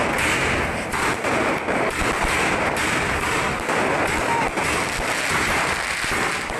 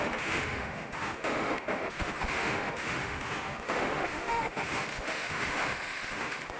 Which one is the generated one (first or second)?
second